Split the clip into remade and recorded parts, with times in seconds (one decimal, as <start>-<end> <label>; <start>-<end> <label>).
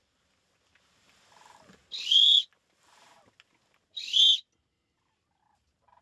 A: 0.0-6.0 recorded